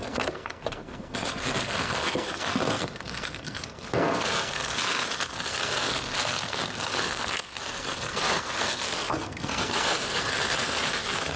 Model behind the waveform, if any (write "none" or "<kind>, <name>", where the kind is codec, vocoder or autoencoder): codec, SNAC